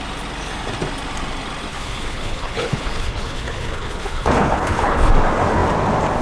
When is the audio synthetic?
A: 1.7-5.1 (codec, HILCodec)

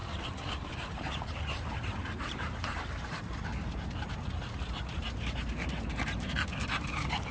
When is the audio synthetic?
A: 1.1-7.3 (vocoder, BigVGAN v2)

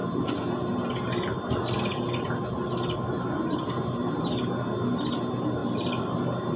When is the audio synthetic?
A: 3.6-6.6 (vocoder, BigVGAN v2)

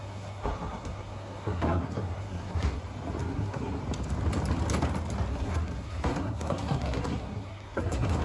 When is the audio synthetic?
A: 0.0-2.8 (codec, SNAC); 3.2-3.8; 5.3-8.2

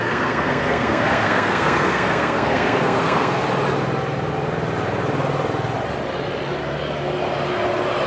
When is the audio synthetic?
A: 0.0-3.4 (codec, SNAC)